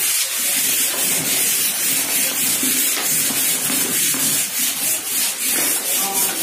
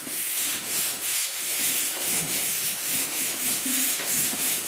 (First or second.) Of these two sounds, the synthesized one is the second